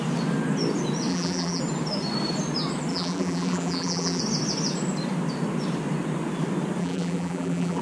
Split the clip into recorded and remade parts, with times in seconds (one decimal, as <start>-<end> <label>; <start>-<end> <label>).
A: 0.0-1.1 recorded; 1.1-1.6 remade; 1.6-2.9 recorded; 2.9-4.2 remade; 4.2-6.8 recorded; 6.8-7.8 remade